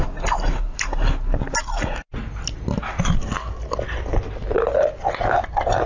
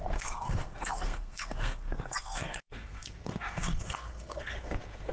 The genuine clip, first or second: first